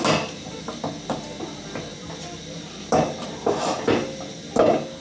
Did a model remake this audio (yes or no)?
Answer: no